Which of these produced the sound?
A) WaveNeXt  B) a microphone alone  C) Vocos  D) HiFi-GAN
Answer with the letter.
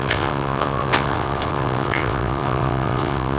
A